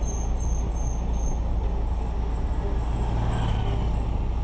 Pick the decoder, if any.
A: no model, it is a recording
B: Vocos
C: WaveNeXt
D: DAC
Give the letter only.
A